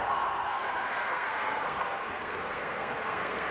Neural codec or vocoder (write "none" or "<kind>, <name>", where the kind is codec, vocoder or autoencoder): codec, SNAC